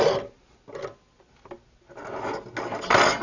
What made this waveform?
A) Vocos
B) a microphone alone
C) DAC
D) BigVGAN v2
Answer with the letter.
B